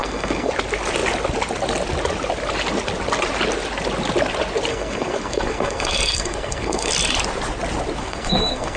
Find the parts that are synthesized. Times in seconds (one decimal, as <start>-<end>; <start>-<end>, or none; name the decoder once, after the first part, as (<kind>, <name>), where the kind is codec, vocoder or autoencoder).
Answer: 0.0-0.5 (codec, SNAC); 4.7-6.9; 8.0-8.8